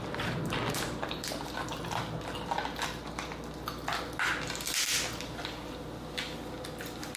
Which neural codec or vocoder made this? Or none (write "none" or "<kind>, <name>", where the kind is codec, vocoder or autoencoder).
none